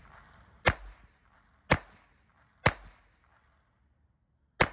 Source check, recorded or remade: recorded